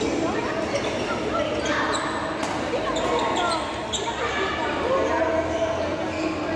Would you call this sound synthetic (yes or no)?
no